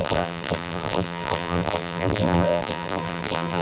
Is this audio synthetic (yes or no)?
yes